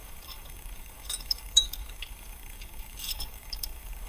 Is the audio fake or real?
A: fake